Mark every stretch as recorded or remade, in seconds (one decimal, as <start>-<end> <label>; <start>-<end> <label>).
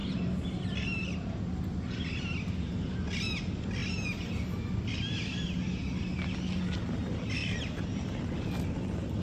0.0-1.4 remade; 1.4-7.4 recorded; 7.4-8.2 remade; 8.2-9.2 recorded